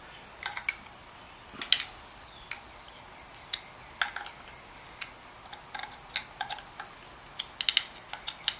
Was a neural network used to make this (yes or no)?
no